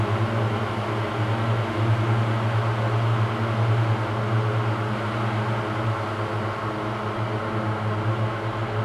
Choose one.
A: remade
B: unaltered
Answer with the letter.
B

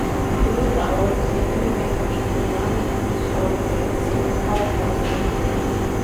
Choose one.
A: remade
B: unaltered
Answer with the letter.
B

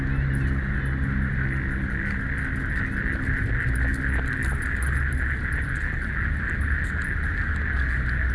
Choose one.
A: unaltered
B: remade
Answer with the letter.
A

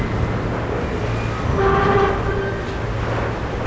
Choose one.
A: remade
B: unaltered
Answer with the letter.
B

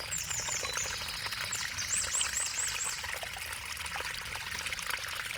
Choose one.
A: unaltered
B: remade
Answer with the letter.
A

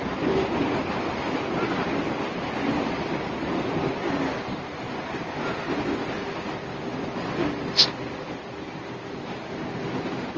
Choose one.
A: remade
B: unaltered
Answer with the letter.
B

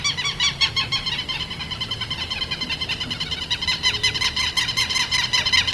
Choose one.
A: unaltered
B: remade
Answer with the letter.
A